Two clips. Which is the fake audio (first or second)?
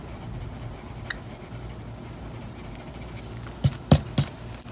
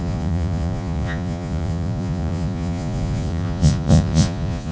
second